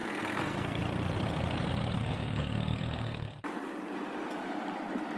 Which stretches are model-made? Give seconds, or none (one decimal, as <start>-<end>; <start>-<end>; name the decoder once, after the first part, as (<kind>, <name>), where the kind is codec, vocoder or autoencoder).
0.0-0.8 (codec, SNAC); 2.0-3.4